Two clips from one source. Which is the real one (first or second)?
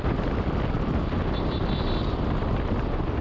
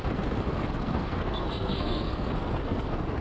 first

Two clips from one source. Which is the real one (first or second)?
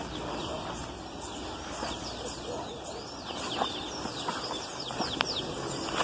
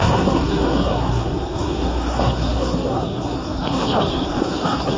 first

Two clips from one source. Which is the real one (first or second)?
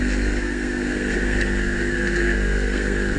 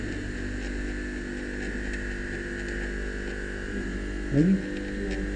second